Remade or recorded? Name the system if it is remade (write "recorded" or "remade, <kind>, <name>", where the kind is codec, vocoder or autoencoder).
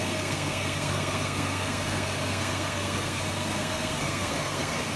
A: remade, codec, SNAC